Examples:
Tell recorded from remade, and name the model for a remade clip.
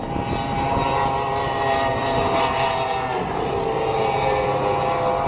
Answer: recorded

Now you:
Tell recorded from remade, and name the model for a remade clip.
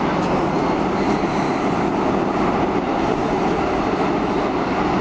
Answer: recorded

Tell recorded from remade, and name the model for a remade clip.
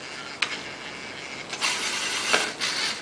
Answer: recorded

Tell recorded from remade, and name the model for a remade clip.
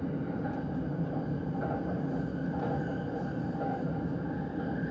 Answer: recorded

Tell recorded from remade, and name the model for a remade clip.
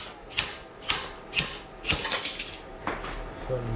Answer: recorded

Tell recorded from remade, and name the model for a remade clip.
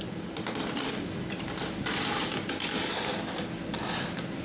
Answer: recorded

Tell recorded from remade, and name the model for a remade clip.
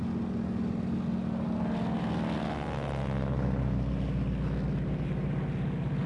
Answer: recorded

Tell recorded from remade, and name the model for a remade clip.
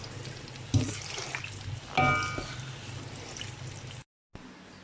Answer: recorded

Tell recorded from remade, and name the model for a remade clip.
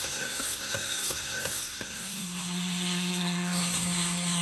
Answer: remade, codec, SNAC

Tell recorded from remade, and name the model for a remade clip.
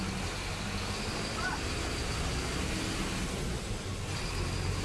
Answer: recorded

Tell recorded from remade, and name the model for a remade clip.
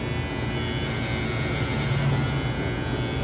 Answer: recorded